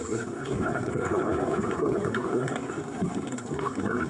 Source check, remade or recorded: remade